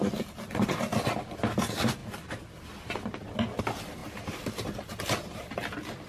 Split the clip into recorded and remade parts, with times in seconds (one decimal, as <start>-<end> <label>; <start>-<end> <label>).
0.0-2.0 remade; 2.0-3.6 recorded; 3.6-6.1 remade